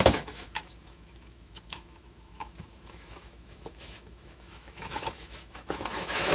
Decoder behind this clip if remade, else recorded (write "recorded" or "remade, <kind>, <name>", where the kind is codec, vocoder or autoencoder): remade, autoencoder, DAC-VAE